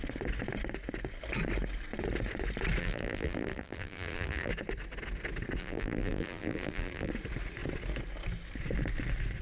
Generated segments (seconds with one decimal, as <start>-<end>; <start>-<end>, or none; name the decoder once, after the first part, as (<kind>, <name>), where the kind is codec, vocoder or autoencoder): 2.8-4.5 (vocoder, BigVGAN v2); 5.6-7.1